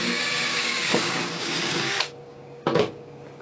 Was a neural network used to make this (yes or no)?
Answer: yes